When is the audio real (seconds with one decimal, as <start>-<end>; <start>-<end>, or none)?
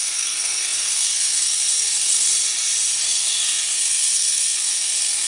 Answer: 2.3-3.0